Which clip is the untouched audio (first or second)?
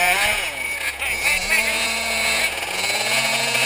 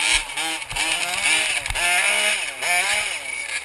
second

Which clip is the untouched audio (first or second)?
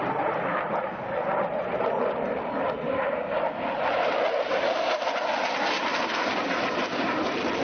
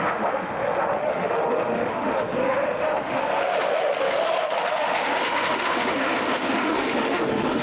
first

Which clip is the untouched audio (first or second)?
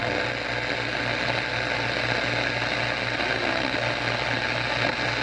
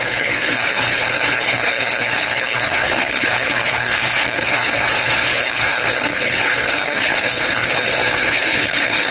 first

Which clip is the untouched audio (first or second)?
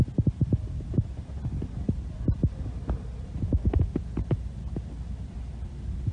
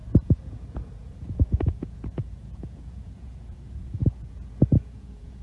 first